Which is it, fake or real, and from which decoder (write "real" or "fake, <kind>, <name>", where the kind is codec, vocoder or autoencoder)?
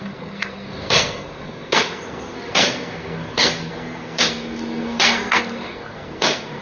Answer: fake, codec, SNAC